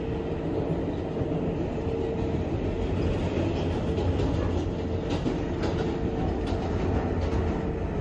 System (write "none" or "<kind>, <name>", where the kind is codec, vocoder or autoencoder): none